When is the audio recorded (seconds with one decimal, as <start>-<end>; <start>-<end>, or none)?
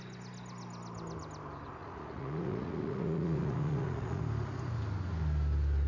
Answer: 0.0-1.8; 4.2-5.9